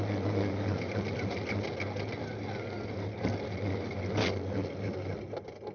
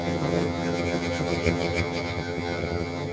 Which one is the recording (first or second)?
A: first